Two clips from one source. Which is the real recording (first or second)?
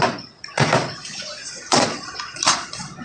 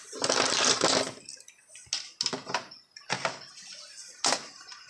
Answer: second